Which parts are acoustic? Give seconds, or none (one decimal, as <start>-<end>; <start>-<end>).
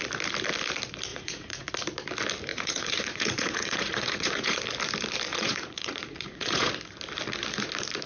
0.0-1.1; 1.7-2.5; 4.6-5.3; 6.7-8.1